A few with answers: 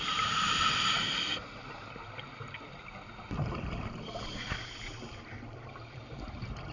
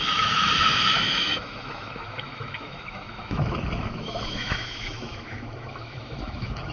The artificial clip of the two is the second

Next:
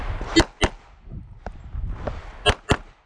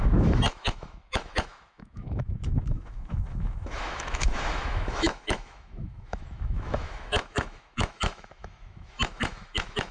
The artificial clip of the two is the second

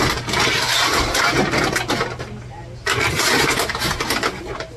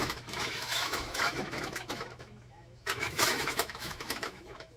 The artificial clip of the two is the second